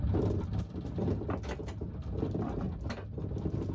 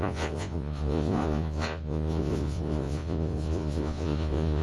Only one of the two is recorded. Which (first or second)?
first